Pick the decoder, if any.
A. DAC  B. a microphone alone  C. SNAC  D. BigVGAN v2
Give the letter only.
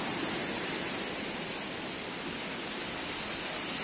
B